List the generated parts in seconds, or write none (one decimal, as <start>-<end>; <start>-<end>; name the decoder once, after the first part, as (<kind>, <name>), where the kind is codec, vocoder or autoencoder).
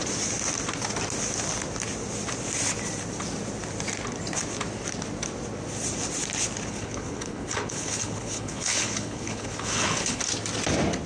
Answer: 6.7-10.2 (codec, HILCodec)